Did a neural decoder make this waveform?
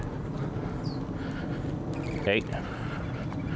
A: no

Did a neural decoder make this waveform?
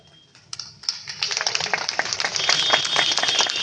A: no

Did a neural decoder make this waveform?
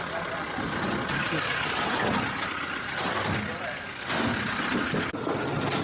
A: no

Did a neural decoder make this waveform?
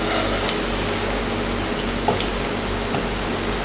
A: no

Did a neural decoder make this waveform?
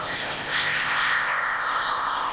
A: yes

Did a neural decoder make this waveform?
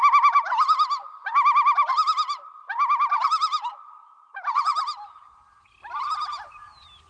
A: no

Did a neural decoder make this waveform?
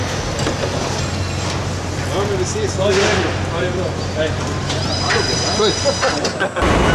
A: no